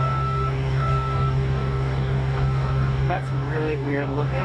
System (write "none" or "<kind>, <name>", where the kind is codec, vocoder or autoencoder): codec, DAC